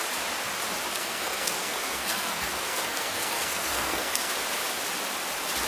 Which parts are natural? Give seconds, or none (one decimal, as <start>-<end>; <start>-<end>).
0.0-0.9; 4.3-5.7